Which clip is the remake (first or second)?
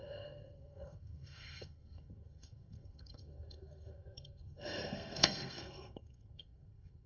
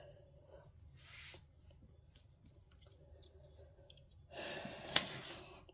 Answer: first